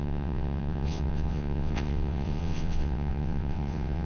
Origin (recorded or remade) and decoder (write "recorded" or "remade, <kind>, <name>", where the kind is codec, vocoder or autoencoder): remade, vocoder, WaveNeXt